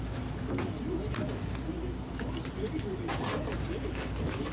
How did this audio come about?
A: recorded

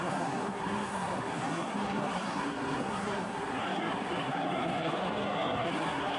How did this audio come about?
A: remade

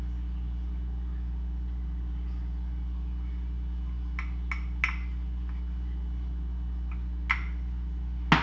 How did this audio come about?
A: recorded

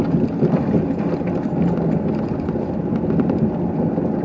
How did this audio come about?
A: recorded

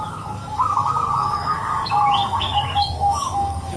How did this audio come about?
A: remade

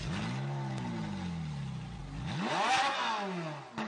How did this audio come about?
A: recorded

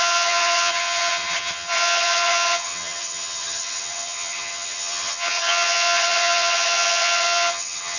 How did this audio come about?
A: remade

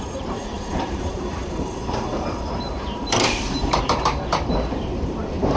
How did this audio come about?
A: remade